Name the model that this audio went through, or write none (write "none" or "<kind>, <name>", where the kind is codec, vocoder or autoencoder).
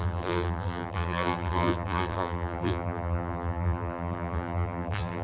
vocoder, BigVGAN v2